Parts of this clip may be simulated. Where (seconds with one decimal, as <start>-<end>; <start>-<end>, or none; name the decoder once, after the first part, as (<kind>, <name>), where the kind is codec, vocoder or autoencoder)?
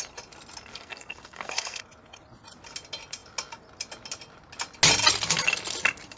0.7-1.8 (codec, SNAC)